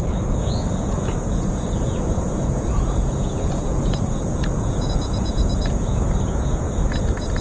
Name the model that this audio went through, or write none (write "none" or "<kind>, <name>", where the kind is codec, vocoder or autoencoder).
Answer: vocoder, Vocos